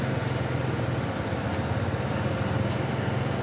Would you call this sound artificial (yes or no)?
no